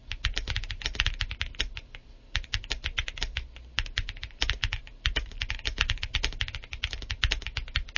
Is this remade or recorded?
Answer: recorded